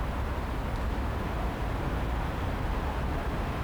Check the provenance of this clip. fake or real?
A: real